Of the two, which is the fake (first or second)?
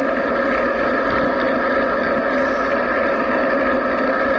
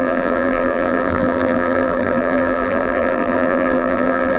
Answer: second